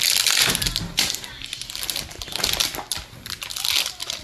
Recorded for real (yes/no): yes